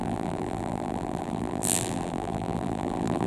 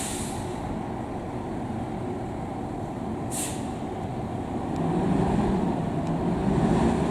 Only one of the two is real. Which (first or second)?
second